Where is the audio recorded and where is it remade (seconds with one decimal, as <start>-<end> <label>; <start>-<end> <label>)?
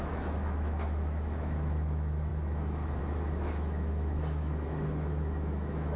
0.0-6.0 remade